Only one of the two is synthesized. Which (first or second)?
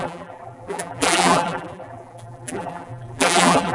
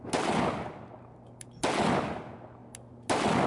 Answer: first